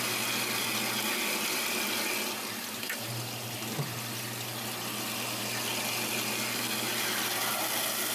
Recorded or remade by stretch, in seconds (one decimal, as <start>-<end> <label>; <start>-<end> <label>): 0.0-8.1 recorded